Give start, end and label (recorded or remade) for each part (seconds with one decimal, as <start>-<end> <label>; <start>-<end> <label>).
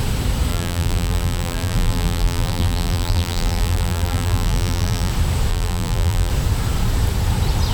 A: 0.0-0.5 recorded; 0.5-5.1 remade; 5.1-5.5 recorded; 5.5-6.3 remade; 6.3-7.7 recorded